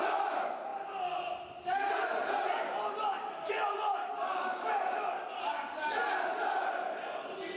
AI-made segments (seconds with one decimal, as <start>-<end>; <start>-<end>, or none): 4.0-4.7